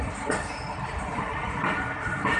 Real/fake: real